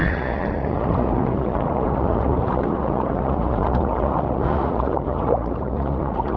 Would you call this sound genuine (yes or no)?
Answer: no